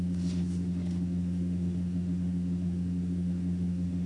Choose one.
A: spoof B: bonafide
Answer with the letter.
A